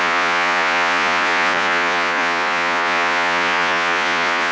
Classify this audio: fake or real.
fake